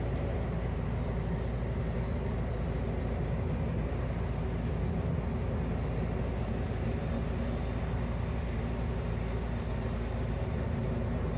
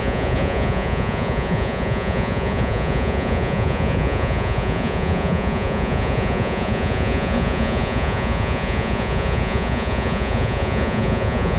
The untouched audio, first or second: first